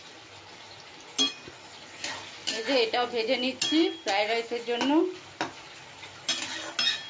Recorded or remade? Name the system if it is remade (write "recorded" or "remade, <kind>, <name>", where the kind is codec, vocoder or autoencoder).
recorded